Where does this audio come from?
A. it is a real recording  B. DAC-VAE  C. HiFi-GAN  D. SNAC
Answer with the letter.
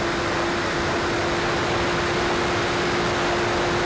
A